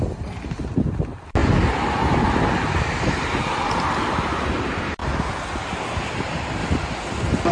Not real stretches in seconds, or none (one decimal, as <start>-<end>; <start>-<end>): none